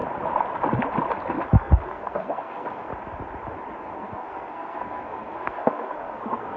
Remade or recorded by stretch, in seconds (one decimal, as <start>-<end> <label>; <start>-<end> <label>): 0.0-1.3 recorded; 1.3-2.9 remade; 2.9-3.8 recorded; 3.8-6.6 remade